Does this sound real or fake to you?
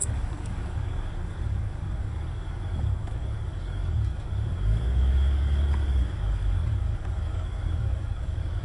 fake